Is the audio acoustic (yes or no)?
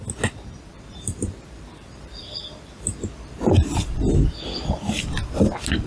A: no